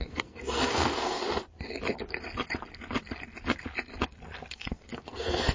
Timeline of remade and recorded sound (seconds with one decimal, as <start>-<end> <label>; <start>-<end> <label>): 0.0-1.2 remade; 1.2-4.5 recorded; 4.5-5.5 remade